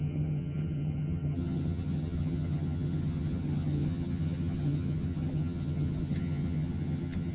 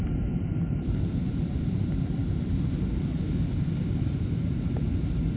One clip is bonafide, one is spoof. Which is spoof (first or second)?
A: first